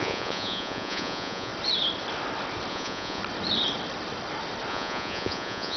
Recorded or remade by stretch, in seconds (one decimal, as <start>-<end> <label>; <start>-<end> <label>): 0.0-1.5 remade; 1.5-2.7 recorded; 2.7-3.2 remade; 3.2-4.7 recorded; 4.7-5.8 remade